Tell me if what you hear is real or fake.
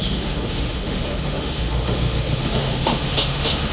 fake